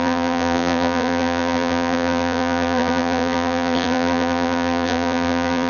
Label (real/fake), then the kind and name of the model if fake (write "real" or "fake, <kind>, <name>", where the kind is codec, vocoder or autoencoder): fake, vocoder, BigVGAN v2